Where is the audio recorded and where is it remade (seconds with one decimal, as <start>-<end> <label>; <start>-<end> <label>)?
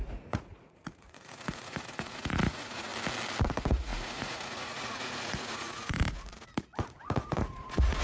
0.0-2.9 remade; 2.9-3.4 recorded; 3.4-8.0 remade